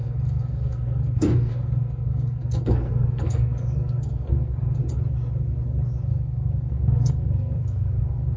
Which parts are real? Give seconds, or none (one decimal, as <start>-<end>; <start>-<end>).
4.8-6.1